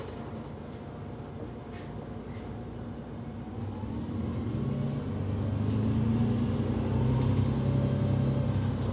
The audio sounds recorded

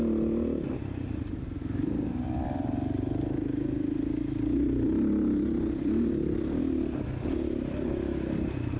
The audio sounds recorded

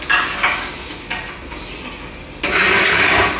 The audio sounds recorded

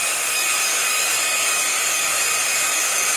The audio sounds remade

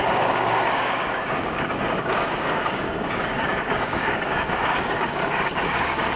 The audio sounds remade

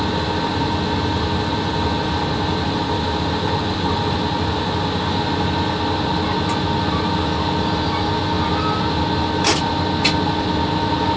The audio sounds recorded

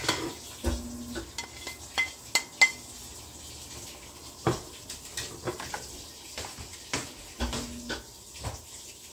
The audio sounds recorded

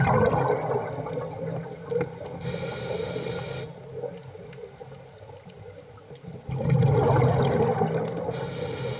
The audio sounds recorded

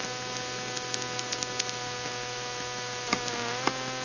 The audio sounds recorded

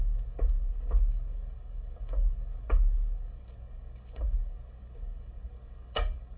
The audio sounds remade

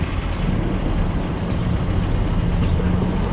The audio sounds recorded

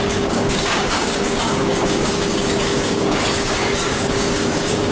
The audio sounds remade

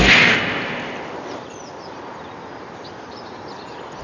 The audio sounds recorded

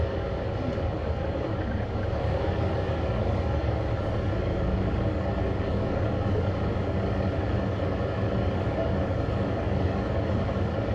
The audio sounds remade